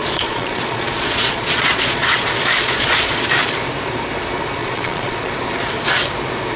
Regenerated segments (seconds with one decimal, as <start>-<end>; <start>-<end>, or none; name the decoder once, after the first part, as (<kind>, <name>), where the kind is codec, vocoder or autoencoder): 0.0-2.2 (vocoder, Vocos); 2.6-3.2; 4.6-5.3